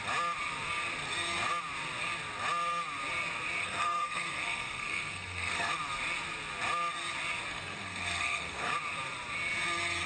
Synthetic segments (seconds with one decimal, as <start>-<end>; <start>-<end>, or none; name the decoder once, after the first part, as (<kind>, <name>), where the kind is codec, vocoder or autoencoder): 3.6-5.7 (codec, SNAC); 7.5-8.7